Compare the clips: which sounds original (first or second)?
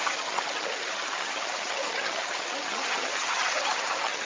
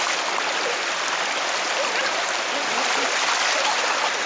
second